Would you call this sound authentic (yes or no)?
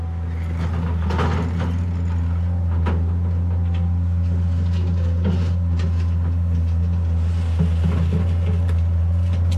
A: yes